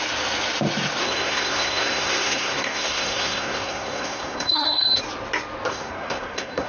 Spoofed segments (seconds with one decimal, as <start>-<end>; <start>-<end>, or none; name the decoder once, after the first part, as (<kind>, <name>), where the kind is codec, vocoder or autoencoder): 1.0-5.0 (codec, SNAC); 5.7-6.7